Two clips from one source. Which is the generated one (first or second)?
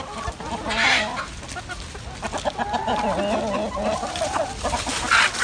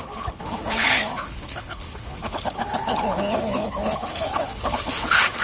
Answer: second